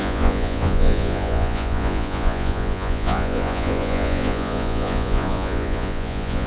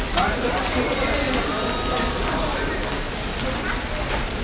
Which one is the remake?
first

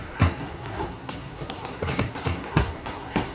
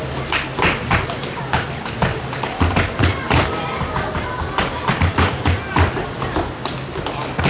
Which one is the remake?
first